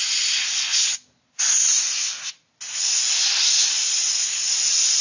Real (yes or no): yes